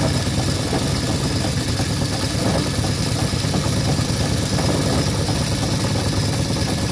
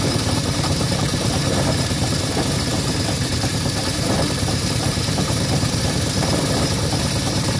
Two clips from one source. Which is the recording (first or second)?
first